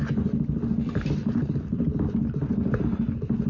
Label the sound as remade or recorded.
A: remade